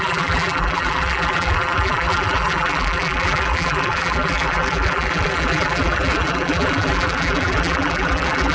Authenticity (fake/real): fake